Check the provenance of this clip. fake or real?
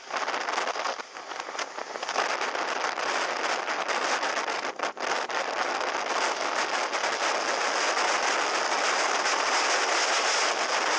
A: real